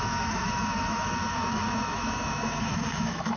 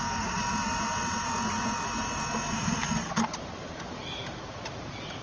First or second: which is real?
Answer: second